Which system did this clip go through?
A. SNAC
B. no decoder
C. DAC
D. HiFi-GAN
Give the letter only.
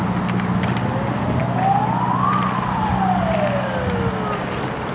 B